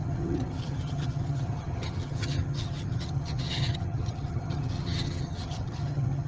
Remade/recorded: remade